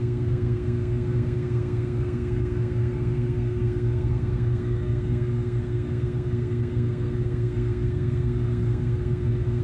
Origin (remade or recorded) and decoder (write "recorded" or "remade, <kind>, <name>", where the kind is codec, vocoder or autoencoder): remade, codec, SNAC